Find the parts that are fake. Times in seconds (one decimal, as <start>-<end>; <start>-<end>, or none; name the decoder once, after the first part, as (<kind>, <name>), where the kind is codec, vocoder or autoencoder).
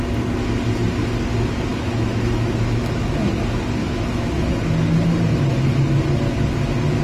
1.7-3.4 (autoencoder, DAC-VAE); 3.8-4.5